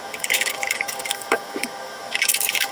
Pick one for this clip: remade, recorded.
remade